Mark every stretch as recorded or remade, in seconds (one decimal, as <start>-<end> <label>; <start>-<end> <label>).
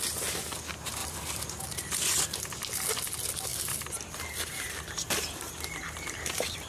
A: 0.0-1.0 recorded; 1.0-2.2 remade; 2.2-3.5 recorded; 3.5-6.7 remade